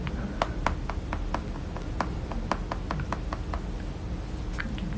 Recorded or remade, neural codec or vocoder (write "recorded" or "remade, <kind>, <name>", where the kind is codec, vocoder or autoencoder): recorded